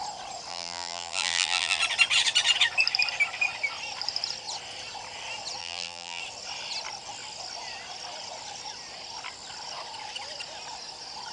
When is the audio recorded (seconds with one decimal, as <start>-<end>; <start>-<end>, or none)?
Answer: 0.0-0.5; 1.8-5.6; 6.2-11.3